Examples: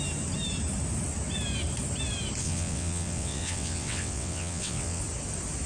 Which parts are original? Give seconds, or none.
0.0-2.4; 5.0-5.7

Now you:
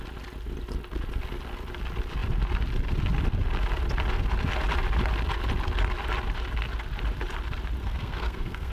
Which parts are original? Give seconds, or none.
0.0-7.8

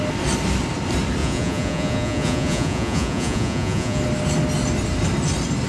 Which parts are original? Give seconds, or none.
0.0-1.2; 4.0-5.7

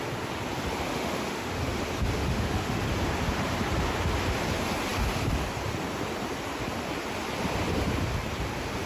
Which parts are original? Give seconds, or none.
0.0-0.9; 1.6-2.2; 2.8-8.9

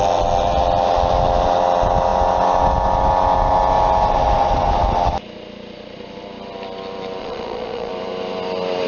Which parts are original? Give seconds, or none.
0.0-7.2; 7.9-8.9